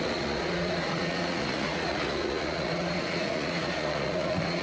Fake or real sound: fake